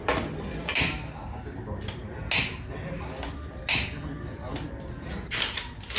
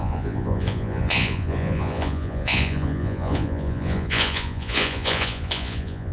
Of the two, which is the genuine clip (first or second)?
first